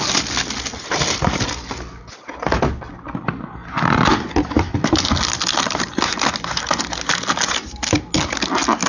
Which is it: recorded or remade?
recorded